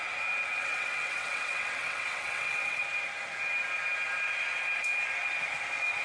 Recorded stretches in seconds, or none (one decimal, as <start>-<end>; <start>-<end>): 0.0-0.6; 2.8-6.0